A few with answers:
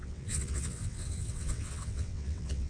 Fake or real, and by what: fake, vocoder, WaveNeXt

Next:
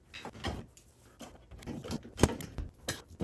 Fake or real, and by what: real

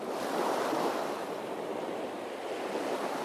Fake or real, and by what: fake, vocoder, BigVGAN v2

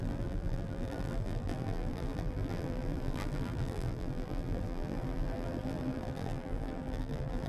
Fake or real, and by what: fake, vocoder, BigVGAN v2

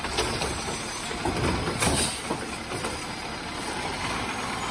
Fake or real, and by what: real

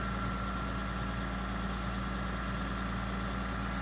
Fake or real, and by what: real